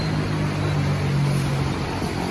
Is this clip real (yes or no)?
yes